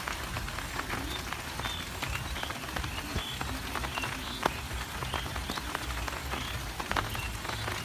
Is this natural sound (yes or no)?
yes